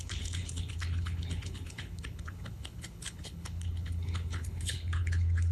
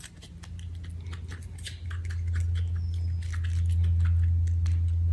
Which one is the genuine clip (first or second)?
second